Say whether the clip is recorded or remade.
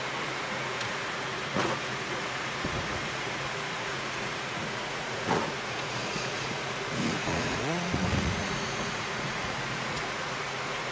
remade